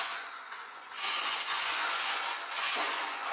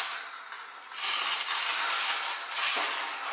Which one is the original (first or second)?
second